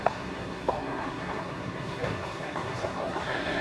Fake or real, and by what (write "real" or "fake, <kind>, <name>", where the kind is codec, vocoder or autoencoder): fake, codec, SNAC